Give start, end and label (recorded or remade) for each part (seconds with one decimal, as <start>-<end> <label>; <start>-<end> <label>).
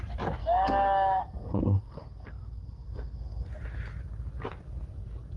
0.0-0.4 recorded; 0.4-3.5 remade; 3.5-5.4 recorded